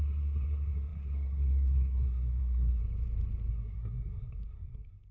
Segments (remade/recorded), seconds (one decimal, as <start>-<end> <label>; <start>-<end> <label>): 0.0-2.8 remade; 2.8-3.5 recorded; 3.5-5.1 remade